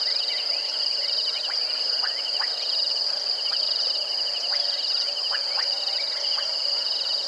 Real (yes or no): yes